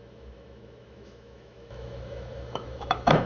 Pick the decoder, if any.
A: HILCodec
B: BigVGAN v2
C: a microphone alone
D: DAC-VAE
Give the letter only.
D